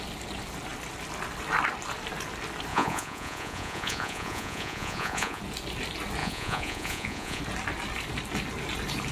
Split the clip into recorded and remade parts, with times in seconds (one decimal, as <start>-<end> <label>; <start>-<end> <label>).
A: 0.0-2.7 recorded; 2.7-5.4 remade; 5.4-6.2 recorded; 6.2-7.4 remade; 7.4-9.1 recorded